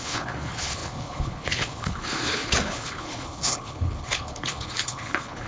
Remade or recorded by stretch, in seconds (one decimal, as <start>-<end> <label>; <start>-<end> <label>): 0.0-5.5 remade